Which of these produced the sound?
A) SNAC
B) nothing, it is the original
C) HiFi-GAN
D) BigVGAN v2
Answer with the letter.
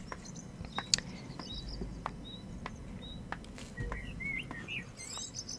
B